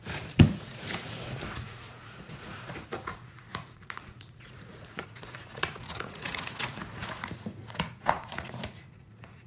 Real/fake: fake